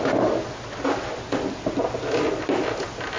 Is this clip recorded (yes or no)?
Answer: yes